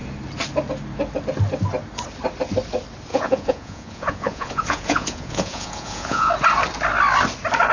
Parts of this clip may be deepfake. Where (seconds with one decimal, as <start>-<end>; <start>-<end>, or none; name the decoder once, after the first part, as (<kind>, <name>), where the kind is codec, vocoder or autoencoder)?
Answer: 3.1-6.3 (vocoder, Vocos)